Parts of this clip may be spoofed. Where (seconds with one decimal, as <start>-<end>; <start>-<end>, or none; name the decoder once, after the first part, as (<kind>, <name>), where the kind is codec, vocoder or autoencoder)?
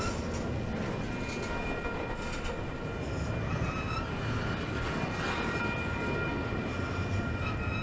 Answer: none